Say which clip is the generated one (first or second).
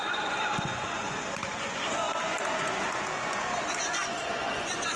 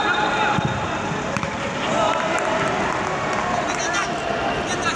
first